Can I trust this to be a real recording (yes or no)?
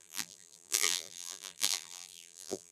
no